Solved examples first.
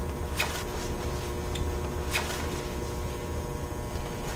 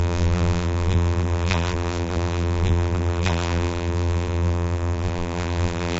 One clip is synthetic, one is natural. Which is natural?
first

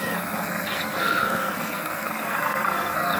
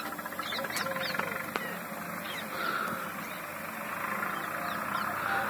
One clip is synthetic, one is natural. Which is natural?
second